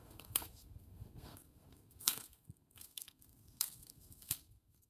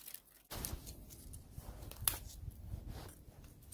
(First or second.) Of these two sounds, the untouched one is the second